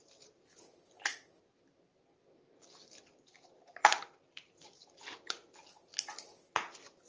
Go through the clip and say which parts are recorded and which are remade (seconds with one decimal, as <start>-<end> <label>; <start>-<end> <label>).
0.0-1.9 recorded; 1.9-5.0 remade; 5.0-7.1 recorded